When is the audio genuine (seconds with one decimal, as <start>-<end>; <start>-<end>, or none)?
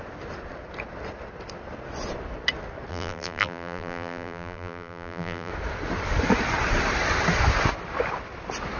0.0-2.9; 5.5-8.8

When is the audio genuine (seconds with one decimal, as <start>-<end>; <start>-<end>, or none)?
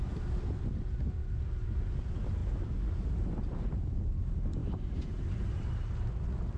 0.0-3.5; 4.1-4.6; 5.8-6.6